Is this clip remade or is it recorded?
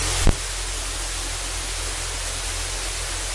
recorded